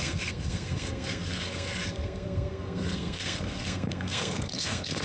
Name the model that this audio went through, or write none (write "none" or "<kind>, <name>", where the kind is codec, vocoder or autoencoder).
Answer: codec, SNAC